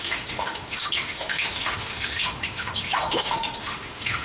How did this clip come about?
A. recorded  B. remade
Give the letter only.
B